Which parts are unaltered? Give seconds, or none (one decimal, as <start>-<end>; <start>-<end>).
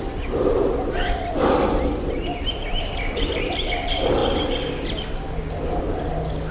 0.0-6.5